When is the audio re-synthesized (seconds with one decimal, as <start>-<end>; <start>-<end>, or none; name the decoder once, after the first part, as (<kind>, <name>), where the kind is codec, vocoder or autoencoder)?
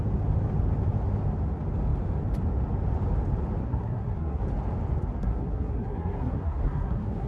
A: 3.6-4.4 (codec, SNAC); 5.2-7.3